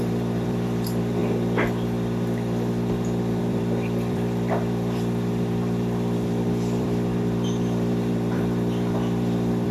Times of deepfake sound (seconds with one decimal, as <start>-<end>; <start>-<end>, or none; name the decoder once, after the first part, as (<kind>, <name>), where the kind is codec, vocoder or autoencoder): 0.0-1.2 (vocoder, BigVGAN v2); 3.4-9.7